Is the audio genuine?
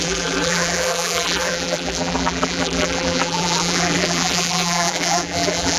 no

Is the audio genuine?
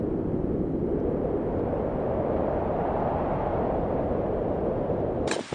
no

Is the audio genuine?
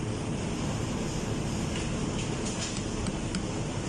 no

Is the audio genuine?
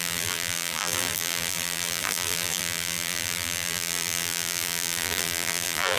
no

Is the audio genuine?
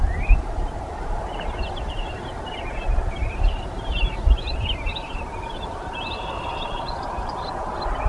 no